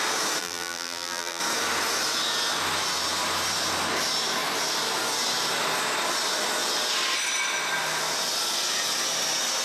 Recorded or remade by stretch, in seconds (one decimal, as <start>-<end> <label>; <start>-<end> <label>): 0.0-0.4 recorded; 0.4-1.4 remade; 1.4-9.6 recorded